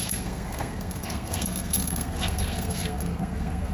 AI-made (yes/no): yes